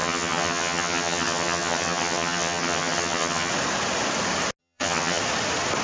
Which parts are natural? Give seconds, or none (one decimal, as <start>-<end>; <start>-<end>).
3.5-4.6; 5.2-5.8